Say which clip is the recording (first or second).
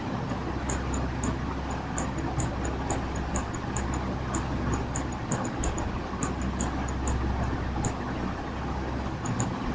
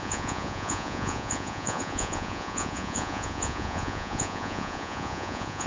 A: first